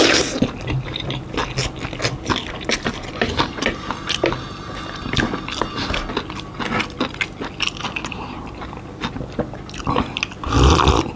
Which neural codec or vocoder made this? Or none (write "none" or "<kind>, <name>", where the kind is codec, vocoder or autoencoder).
none